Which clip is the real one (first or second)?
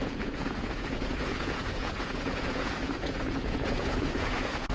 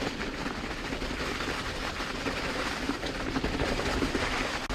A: second